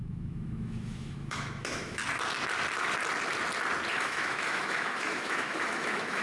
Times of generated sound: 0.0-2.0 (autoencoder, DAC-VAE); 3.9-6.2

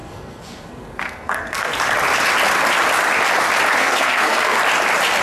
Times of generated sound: 0.0-1.7 (codec, SNAC); 3.8-4.6

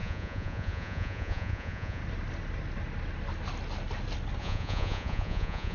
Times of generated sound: 0.0-2.0 (vocoder, Vocos); 4.4-5.7

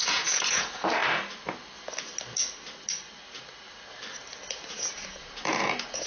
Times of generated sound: 0.0-1.0 (vocoder, Vocos); 4.7-6.1

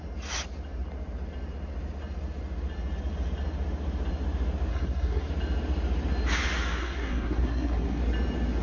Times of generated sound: 4.7-5.3 (codec, SNAC); 6.8-8.0

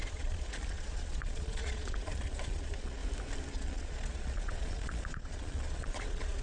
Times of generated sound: 0.0-3.0 (vocoder, Vocos); 3.5-6.4